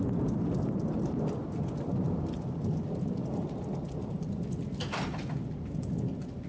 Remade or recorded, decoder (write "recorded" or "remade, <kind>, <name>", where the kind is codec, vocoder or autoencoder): remade, vocoder, BigVGAN v2